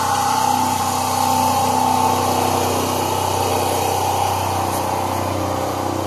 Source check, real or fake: real